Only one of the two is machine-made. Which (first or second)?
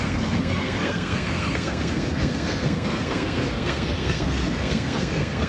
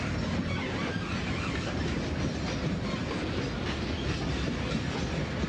first